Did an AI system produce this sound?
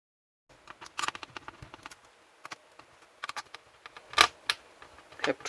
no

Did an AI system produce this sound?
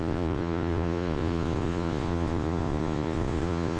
yes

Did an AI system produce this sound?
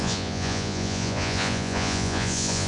yes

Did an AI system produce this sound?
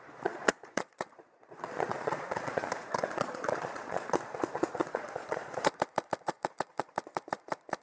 yes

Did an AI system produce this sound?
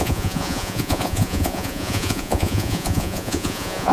yes